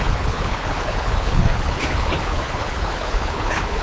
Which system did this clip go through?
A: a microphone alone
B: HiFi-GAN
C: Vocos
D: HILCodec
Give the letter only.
D